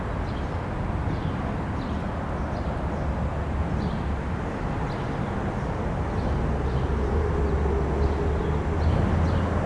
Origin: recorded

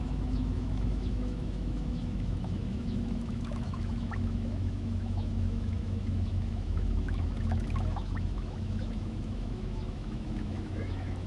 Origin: remade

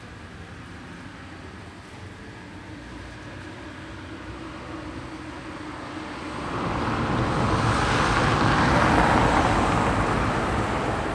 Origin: recorded